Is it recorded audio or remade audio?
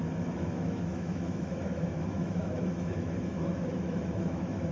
remade